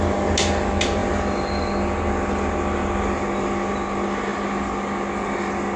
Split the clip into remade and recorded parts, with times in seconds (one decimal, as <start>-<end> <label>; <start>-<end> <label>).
0.0-5.8 recorded